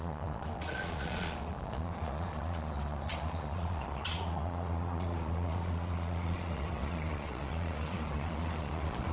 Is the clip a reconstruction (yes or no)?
yes